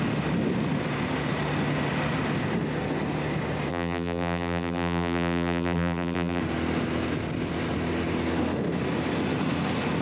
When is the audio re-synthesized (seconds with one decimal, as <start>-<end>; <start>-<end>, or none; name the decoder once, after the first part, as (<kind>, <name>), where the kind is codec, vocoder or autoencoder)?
3.7-6.4 (vocoder, BigVGAN v2)